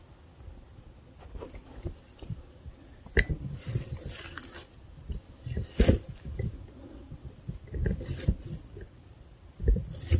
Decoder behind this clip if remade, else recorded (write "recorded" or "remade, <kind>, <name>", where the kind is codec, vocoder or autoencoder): recorded